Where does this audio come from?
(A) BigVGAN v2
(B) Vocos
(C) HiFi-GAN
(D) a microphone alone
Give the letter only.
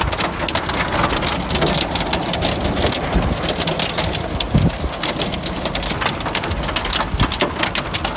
D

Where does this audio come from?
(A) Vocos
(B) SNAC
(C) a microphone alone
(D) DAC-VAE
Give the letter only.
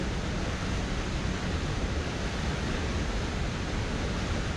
C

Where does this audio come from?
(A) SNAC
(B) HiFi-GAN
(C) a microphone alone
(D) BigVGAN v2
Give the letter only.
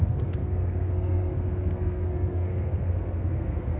A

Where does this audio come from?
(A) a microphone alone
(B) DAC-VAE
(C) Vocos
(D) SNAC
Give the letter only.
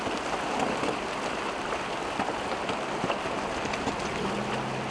A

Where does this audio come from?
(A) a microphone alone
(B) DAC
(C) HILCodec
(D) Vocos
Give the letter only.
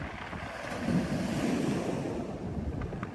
A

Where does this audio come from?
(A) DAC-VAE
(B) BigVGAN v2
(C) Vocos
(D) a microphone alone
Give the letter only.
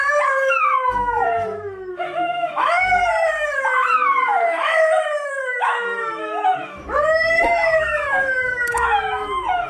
A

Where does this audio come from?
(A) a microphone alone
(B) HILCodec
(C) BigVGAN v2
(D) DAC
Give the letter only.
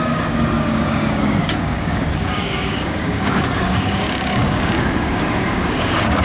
D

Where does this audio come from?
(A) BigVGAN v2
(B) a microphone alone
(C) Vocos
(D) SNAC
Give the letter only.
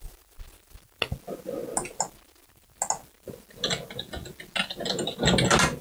B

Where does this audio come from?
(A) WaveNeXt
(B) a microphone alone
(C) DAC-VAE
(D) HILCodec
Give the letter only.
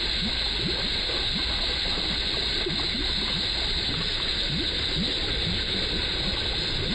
B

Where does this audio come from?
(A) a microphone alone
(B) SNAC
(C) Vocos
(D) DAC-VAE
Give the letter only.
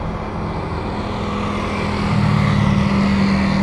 A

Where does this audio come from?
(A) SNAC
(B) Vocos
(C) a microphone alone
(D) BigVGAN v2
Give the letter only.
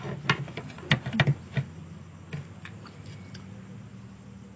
C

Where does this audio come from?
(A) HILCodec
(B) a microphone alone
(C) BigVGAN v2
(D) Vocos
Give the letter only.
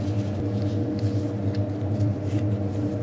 B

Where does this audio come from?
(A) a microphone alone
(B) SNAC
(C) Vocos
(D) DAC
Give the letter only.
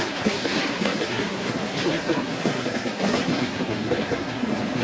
B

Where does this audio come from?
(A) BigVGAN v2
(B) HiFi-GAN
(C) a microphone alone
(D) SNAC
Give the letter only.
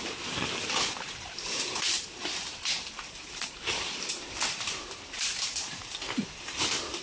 A